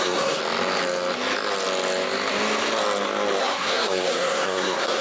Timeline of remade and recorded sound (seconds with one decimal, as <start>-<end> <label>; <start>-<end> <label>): 0.0-0.4 remade; 0.4-3.4 recorded; 3.4-5.0 remade